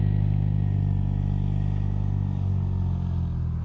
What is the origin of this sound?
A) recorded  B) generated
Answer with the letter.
A